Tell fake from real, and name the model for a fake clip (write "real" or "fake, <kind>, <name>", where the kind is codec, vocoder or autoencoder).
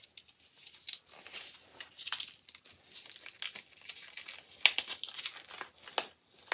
real